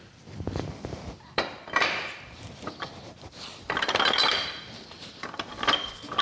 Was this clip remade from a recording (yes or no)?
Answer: yes